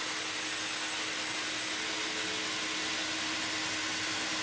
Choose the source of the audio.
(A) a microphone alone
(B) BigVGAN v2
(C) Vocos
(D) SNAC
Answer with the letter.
A